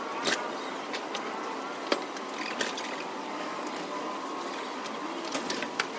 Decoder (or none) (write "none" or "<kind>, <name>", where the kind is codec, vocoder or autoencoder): none